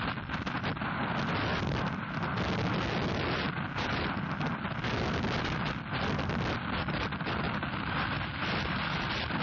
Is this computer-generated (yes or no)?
no